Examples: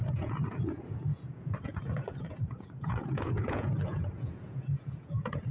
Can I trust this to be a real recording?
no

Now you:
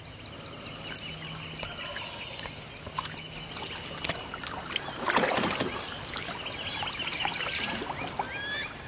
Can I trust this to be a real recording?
yes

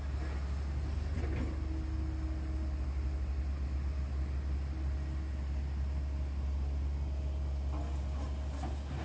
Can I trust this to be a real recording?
yes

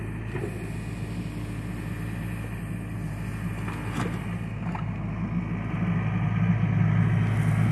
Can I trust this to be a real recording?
yes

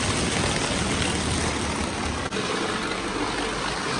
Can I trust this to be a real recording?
yes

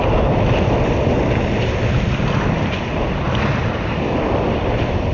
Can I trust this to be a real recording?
yes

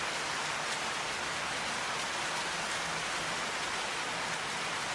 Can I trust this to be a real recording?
yes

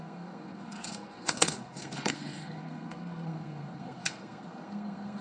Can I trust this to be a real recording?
no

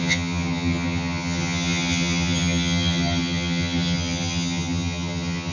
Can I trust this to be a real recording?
no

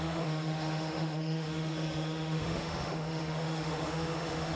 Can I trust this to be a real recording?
no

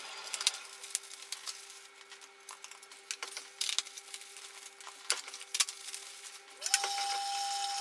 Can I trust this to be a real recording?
yes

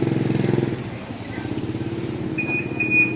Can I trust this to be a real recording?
yes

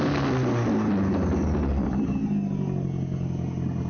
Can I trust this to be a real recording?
yes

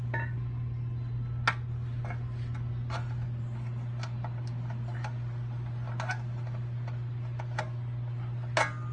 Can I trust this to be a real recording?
yes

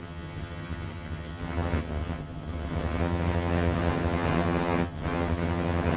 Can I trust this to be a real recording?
no